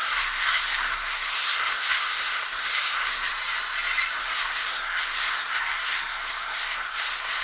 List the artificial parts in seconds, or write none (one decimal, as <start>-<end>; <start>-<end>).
0.0-3.3; 4.2-7.4